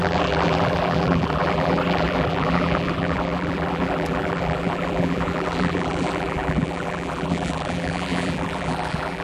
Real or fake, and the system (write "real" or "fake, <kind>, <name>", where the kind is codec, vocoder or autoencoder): fake, vocoder, BigVGAN v2